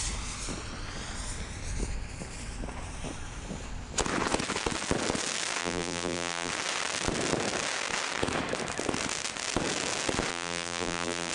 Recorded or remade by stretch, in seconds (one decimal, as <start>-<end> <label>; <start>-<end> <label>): 0.0-5.6 recorded; 5.6-6.5 remade; 6.5-10.3 recorded; 10.3-11.3 remade

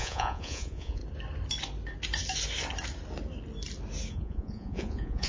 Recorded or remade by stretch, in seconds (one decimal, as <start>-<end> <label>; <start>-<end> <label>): 0.0-1.0 remade; 1.0-4.1 recorded; 4.1-5.3 remade

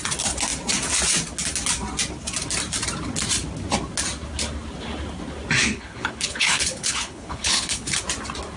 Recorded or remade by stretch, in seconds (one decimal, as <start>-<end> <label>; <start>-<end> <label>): 0.0-5.6 recorded; 5.6-8.0 remade; 8.0-8.6 recorded

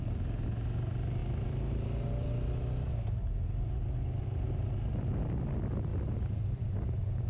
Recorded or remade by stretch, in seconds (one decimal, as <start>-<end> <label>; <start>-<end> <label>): 0.0-7.3 recorded

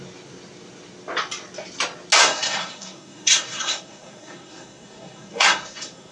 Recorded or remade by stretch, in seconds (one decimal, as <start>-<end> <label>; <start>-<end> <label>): 0.0-2.2 recorded; 2.2-6.1 remade

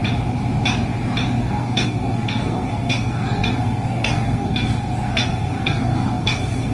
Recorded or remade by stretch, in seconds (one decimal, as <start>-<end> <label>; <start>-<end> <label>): 0.0-1.4 recorded; 1.4-6.7 remade

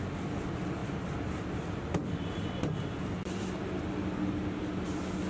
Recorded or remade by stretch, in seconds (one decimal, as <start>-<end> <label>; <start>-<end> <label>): 0.0-5.3 recorded

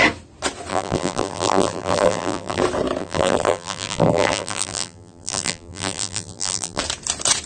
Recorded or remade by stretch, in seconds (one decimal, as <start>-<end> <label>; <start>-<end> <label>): 0.0-0.7 recorded; 0.7-2.6 remade; 2.6-3.0 recorded; 3.0-6.8 remade; 6.8-7.5 recorded